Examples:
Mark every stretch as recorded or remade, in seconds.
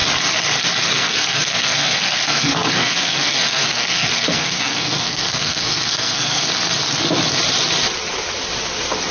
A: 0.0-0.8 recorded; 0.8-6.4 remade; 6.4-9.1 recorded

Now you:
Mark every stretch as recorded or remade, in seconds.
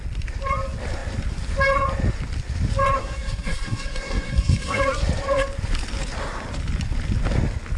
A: 0.0-3.0 recorded; 3.0-4.8 remade; 4.8-7.8 recorded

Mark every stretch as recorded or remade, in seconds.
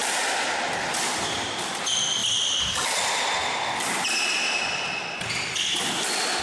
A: 0.0-6.4 recorded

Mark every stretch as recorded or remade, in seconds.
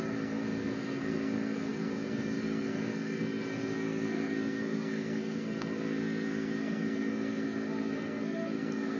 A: 0.0-9.0 remade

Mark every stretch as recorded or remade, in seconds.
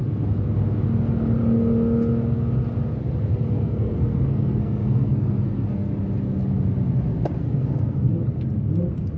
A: 0.0-3.3 recorded; 3.3-5.9 remade; 5.9-7.4 recorded; 7.4-8.3 remade; 8.3-9.2 recorded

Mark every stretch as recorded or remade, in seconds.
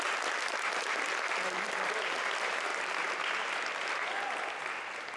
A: 0.0-5.2 recorded